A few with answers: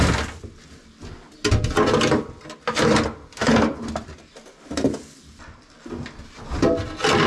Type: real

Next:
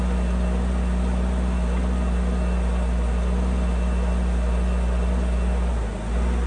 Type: real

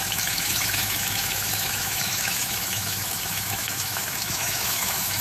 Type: fake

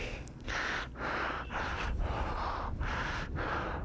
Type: real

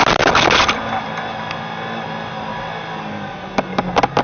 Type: real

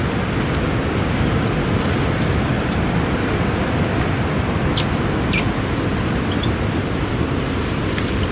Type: real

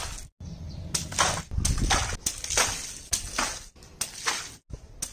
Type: real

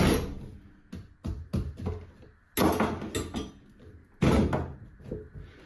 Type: real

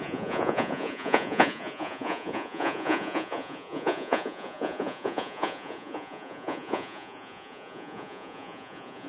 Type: fake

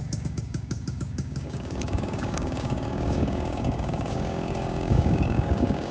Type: fake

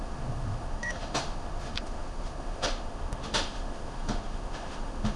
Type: fake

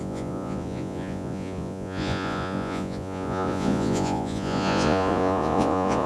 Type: fake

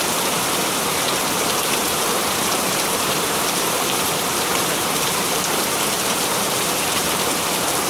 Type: fake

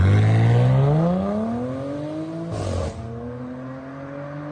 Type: real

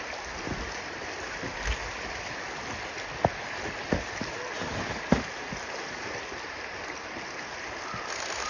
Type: real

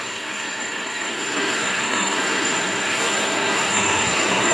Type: fake